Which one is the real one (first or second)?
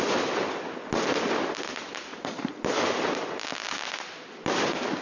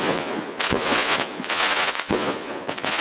first